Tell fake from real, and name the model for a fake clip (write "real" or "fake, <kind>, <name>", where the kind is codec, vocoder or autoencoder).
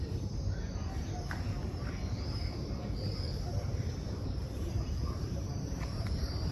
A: fake, vocoder, BigVGAN v2